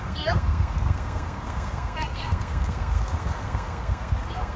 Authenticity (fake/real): fake